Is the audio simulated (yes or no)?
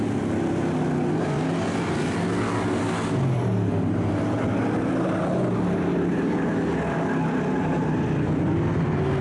no